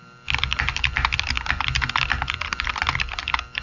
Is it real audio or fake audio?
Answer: real